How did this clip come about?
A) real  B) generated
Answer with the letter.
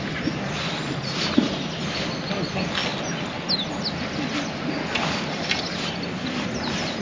A